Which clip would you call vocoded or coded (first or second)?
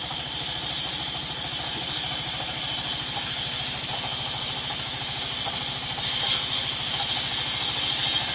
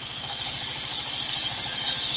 second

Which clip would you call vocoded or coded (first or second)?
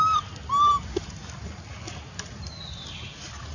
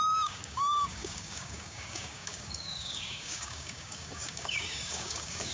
second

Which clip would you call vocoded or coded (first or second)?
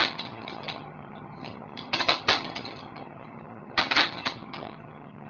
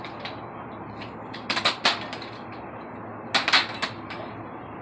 first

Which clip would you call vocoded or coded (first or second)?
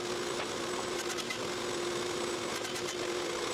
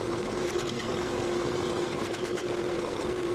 second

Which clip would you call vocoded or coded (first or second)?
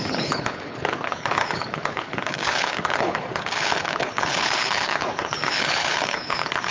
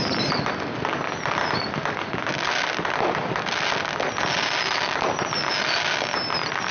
first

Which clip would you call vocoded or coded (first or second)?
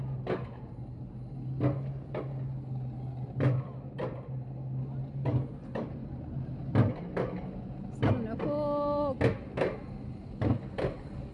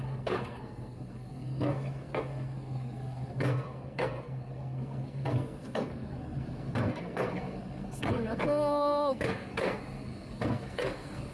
second